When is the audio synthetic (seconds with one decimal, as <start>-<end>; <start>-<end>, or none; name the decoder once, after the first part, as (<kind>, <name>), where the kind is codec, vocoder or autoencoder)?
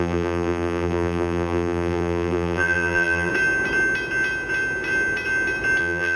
0.0-3.3 (vocoder, BigVGAN v2); 5.8-6.2